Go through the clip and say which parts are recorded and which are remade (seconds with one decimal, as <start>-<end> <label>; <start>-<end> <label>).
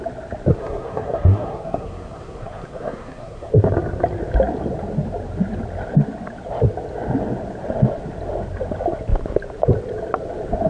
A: 0.0-0.5 recorded; 0.5-3.5 remade; 3.5-10.7 recorded